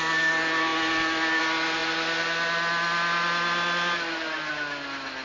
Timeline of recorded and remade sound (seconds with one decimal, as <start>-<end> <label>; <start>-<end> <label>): 0.0-5.2 recorded